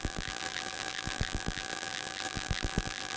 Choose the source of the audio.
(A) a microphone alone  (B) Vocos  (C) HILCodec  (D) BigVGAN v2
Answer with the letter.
D